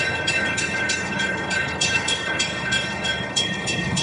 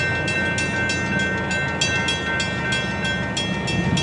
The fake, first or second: first